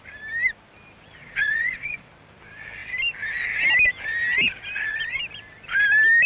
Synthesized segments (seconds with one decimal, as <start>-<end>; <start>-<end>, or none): 1.2-2.1